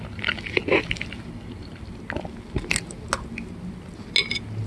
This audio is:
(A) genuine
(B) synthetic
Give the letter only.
A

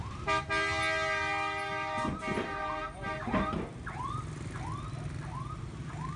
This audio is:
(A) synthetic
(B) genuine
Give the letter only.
B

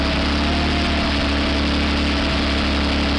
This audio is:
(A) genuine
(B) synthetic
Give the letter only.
A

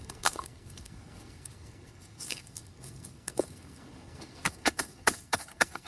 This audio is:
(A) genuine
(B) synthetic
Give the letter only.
B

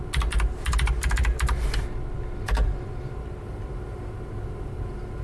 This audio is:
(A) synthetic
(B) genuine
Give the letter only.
B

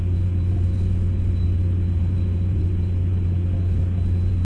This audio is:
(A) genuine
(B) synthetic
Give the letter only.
A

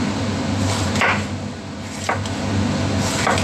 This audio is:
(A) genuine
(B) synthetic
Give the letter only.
A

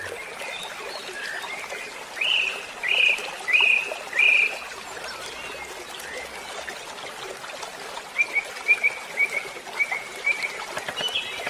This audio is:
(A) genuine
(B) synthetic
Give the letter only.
A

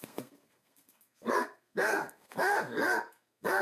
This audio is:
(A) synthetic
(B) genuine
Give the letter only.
A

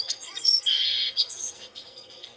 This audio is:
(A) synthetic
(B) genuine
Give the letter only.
A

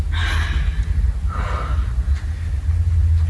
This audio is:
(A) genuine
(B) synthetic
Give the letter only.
A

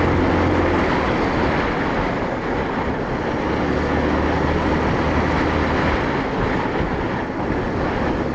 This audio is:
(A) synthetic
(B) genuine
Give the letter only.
B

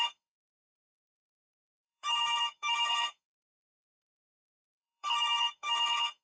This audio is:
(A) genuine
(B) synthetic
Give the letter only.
B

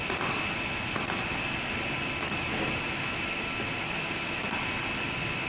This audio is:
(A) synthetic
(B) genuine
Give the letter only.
B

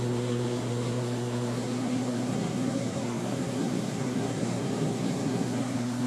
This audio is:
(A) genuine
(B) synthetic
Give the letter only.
B